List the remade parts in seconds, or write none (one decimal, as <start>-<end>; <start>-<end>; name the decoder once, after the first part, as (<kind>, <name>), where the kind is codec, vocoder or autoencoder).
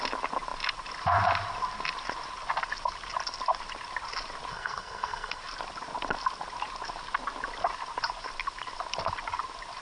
4.5-5.4 (codec, SNAC)